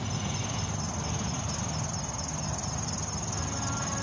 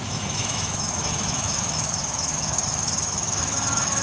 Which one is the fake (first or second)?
second